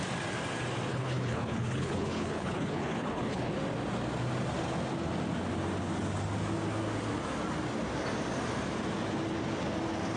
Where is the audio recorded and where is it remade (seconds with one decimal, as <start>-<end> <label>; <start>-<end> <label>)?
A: 0.0-0.9 recorded; 0.9-3.5 remade; 3.5-10.2 recorded